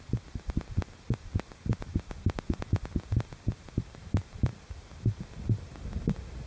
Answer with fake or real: real